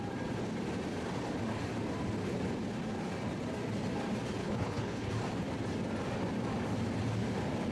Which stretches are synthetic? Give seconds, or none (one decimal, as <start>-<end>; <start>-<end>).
4.4-5.1